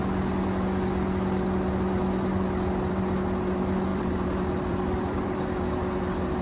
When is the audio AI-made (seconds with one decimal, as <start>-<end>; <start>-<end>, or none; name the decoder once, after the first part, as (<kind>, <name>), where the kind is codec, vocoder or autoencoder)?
3.9-5.6 (vocoder, BigVGAN v2)